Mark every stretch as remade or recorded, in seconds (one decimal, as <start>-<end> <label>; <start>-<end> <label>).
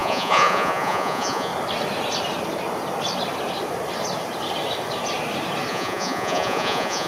0.0-1.5 remade; 1.5-5.7 recorded; 5.7-7.1 remade